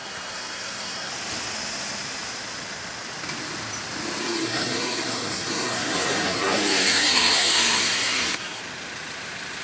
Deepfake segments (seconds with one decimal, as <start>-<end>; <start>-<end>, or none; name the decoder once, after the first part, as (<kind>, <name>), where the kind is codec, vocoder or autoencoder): 0.0-1.1 (codec, SNAC); 4.2-8.6